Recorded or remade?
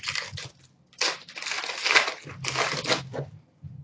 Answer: recorded